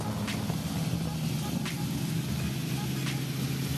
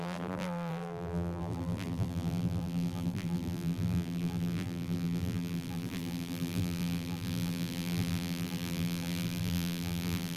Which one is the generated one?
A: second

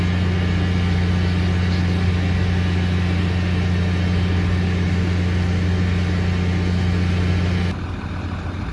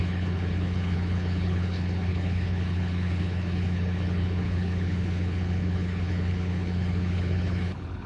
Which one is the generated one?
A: second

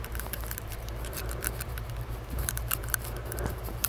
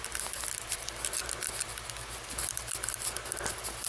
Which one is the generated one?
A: first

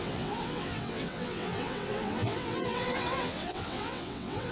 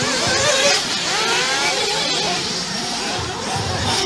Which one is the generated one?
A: first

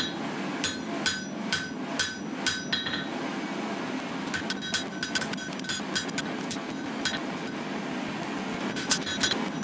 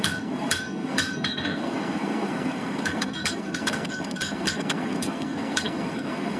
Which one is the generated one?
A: second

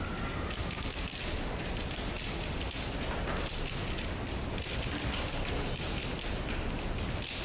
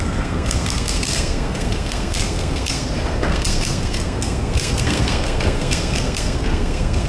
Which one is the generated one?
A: second